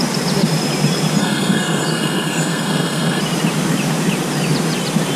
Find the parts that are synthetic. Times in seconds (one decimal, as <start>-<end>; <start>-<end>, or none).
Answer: 1.2-3.2